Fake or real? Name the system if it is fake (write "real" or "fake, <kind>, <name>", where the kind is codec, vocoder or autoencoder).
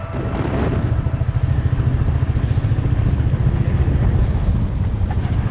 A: real